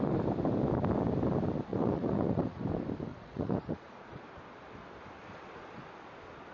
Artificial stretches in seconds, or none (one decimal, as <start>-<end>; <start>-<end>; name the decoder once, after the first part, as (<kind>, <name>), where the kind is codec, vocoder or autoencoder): 1.7-2.6 (vocoder, Vocos); 3.1-4.2

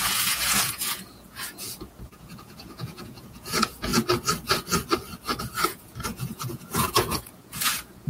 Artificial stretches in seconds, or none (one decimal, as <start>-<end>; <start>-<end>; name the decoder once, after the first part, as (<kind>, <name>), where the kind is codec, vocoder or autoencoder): 0.0-3.9 (vocoder, Vocos); 5.4-8.1

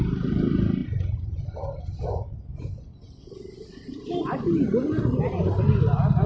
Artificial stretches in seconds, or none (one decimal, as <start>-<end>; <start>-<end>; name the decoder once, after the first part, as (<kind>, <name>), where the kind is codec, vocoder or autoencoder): 2.9-5.6 (vocoder, BigVGAN v2)

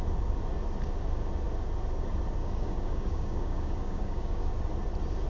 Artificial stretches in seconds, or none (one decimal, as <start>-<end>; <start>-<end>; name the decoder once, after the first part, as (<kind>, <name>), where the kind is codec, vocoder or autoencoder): 2.4-4.5 (codec, DAC)

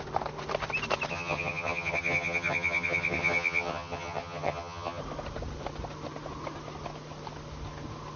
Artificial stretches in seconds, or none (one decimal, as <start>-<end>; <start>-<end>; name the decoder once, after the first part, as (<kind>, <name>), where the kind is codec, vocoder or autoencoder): 1.1-5.0 (vocoder, HiFi-GAN)

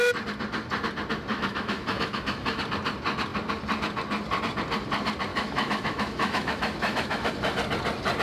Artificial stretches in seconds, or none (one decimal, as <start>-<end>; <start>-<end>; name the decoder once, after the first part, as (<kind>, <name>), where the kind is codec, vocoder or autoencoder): 1.3-2.6 (autoencoder, DAC-VAE); 5.3-7.3